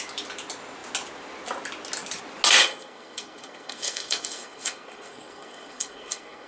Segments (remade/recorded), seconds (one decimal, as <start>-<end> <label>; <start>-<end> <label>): 0.0-2.6 recorded; 2.6-6.5 remade

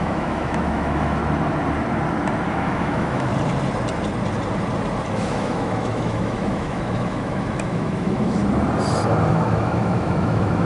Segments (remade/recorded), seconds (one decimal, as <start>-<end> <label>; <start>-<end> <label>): 0.0-1.2 remade; 1.2-2.5 recorded; 2.5-3.3 remade; 3.3-5.1 recorded; 5.1-8.4 remade; 8.4-9.3 recorded; 9.3-10.6 remade

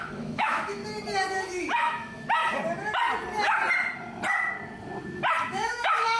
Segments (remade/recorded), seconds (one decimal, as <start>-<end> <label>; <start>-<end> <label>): 0.0-0.8 remade; 0.8-1.6 recorded; 1.6-2.4 remade; 2.4-5.4 recorded; 5.4-6.2 remade

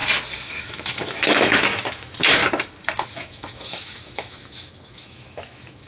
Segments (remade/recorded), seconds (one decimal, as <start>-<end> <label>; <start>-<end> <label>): 0.0-0.6 recorded; 0.6-2.4 remade; 2.4-3.1 recorded; 3.1-5.9 remade